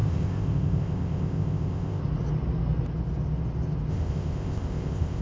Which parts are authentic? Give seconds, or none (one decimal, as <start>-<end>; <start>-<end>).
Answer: 2.0-3.9